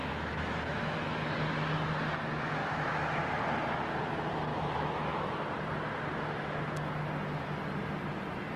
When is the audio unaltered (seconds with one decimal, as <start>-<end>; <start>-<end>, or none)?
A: 1.3-2.6; 3.2-4.5; 5.4-8.6